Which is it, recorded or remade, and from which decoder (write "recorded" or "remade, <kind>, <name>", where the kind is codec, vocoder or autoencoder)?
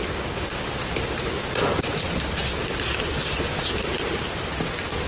recorded